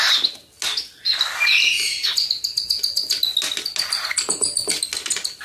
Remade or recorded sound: recorded